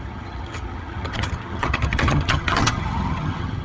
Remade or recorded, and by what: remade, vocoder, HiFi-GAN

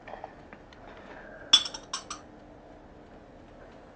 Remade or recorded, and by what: recorded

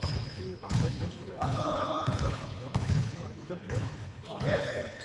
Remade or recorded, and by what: remade, codec, HILCodec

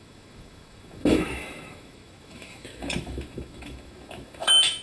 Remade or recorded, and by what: remade, autoencoder, DAC-VAE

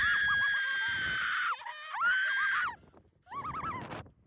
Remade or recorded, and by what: recorded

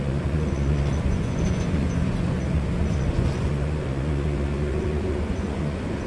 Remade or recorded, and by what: remade, vocoder, Vocos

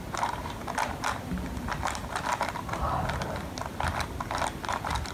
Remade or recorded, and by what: remade, vocoder, BigVGAN v2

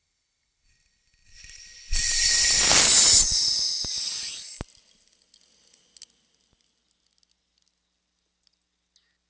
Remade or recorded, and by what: recorded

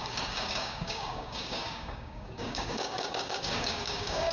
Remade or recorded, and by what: remade, codec, DAC